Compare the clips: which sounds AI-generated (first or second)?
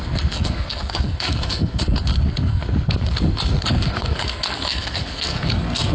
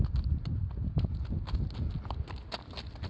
first